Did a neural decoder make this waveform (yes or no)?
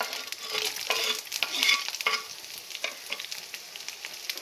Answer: no